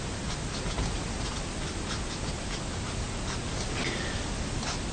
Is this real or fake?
real